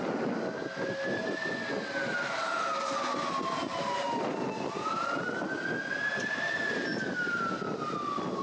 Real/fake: real